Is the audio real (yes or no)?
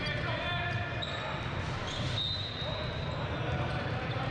yes